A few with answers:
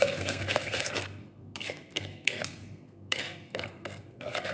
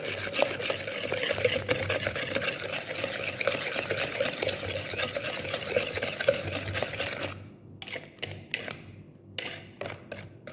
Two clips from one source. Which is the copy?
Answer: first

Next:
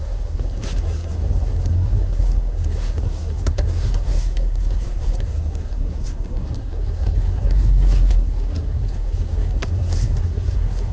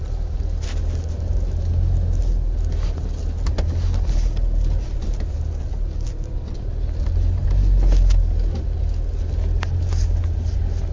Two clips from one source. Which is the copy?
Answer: first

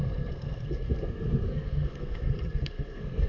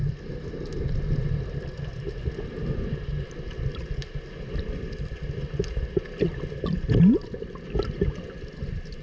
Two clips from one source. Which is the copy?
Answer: first